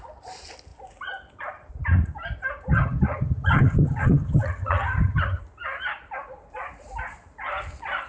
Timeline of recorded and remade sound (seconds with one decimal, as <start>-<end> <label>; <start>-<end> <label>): 0.0-2.7 recorded; 2.7-5.4 remade; 5.4-8.1 recorded